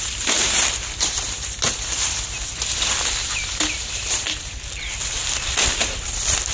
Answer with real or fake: real